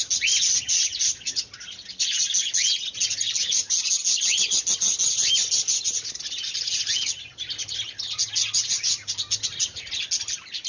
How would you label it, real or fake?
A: real